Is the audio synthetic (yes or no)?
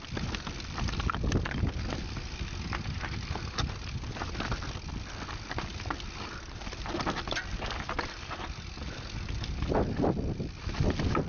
no